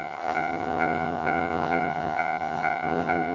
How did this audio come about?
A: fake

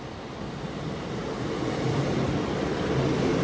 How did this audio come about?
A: real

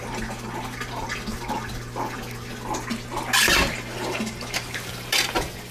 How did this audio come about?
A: real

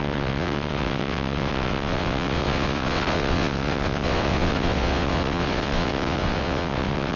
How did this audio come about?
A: fake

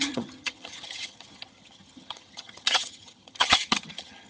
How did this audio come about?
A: fake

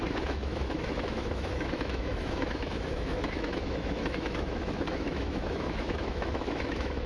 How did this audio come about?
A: fake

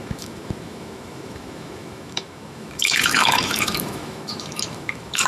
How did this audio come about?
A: fake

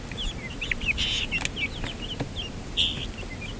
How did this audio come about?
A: real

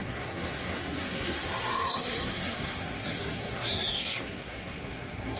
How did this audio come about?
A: fake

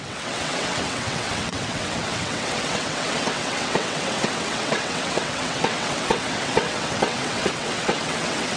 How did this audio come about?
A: fake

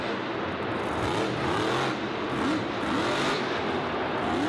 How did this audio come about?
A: real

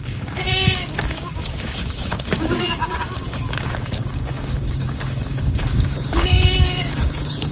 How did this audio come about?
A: fake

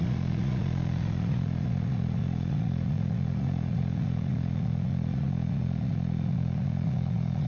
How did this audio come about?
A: fake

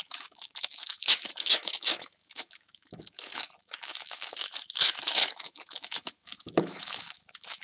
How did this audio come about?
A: fake